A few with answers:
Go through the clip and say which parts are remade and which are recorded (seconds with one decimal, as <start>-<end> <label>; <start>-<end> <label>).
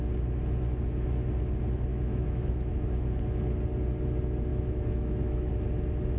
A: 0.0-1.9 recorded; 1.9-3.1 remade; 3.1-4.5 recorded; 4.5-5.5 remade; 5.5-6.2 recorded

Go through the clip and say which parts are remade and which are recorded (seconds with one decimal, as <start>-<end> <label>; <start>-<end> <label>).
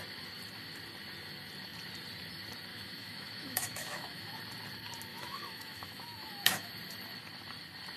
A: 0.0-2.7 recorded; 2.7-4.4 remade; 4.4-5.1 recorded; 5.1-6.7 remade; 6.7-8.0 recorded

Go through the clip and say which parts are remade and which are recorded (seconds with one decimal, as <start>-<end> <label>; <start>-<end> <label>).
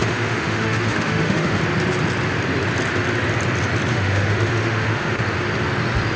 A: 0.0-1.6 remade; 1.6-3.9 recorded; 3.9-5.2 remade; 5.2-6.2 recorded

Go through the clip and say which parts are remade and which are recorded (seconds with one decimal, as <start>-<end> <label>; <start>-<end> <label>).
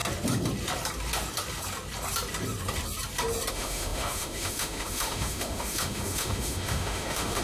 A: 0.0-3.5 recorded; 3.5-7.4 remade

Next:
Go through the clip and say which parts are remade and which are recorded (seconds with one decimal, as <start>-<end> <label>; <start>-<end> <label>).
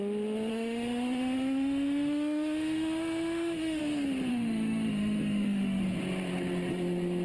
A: 0.0-0.5 recorded; 0.5-3.8 remade; 3.8-4.3 recorded; 4.3-5.8 remade; 5.8-7.2 recorded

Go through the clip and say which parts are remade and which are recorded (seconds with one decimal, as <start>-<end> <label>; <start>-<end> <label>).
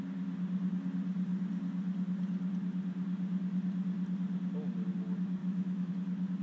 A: 0.0-5.4 recorded; 5.4-5.9 remade; 5.9-6.4 recorded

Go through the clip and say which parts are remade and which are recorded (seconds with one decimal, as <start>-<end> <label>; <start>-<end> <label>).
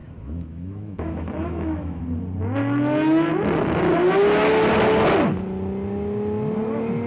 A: 0.0-2.0 remade; 2.0-7.1 recorded